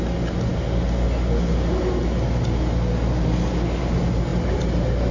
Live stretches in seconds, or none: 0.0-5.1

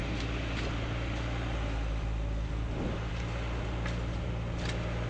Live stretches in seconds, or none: 0.0-5.1

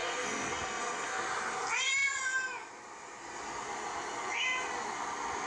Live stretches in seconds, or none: 1.2-5.5

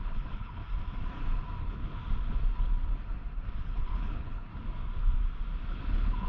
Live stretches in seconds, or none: 0.6-1.6; 2.0-3.6; 4.5-5.7

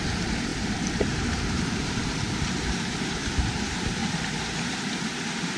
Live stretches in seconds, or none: none

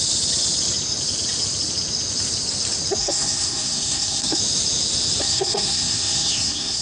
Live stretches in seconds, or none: 0.0-3.0; 4.4-5.2

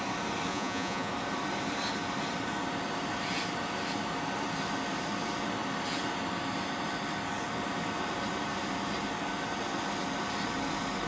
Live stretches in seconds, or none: 0.0-0.5; 1.1-11.1

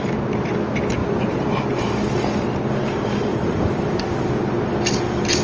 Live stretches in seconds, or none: 0.0-1.0; 2.2-3.3; 4.0-5.4